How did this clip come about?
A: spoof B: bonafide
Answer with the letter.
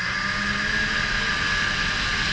B